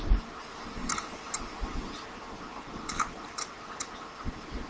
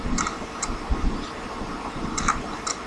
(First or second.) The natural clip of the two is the first